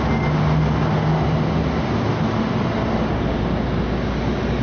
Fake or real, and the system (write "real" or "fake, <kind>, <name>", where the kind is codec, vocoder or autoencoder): real